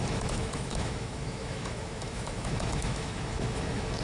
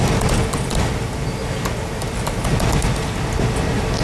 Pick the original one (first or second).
second